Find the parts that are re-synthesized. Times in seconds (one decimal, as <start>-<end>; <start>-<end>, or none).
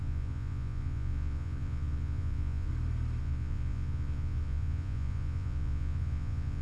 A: 0.0-2.7; 3.2-6.6